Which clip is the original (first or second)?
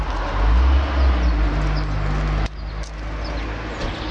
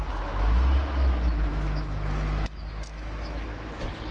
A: first